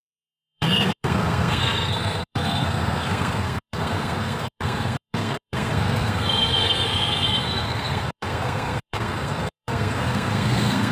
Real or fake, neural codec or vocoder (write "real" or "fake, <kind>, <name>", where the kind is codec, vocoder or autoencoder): fake, codec, SNAC